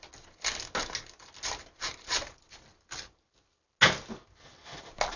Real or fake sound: real